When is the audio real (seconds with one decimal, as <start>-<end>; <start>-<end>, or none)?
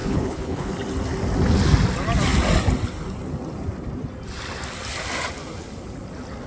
0.7-6.5